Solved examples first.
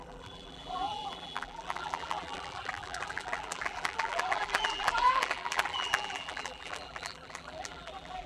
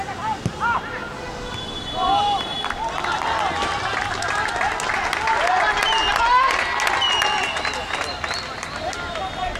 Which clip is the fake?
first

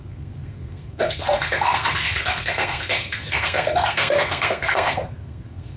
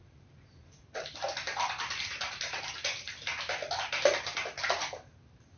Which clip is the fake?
first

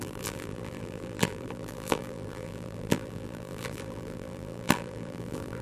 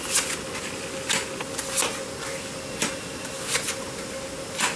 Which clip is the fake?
first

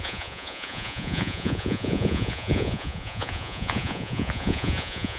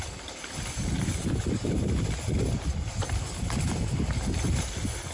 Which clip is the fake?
first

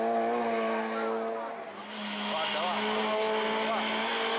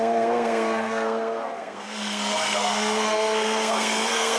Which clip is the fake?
second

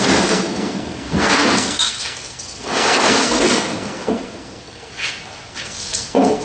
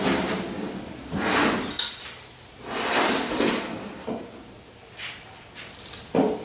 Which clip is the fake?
first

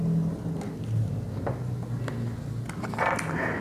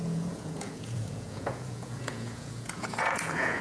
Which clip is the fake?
second